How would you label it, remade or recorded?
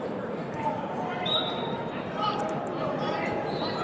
remade